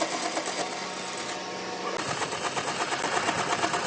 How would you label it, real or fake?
real